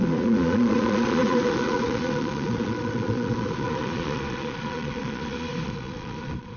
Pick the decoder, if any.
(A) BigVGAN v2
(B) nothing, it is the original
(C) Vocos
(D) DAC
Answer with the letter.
C